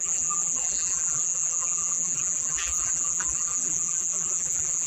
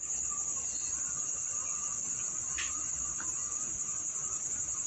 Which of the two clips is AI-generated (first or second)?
first